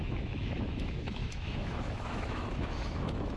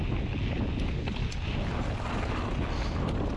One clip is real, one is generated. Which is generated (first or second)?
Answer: first